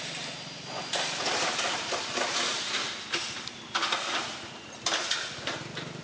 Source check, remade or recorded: recorded